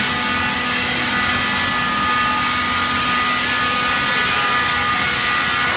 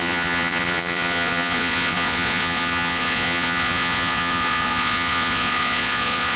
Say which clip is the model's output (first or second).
second